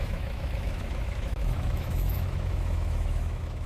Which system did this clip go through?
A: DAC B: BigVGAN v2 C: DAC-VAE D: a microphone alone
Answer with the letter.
C